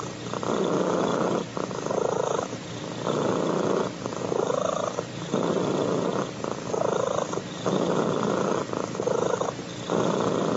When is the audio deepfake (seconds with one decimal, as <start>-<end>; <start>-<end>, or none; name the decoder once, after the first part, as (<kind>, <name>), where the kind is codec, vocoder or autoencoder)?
1.1-3.1 (vocoder, BigVGAN v2); 4.8-8.1